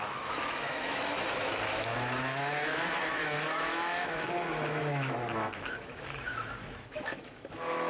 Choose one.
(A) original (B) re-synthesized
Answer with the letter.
B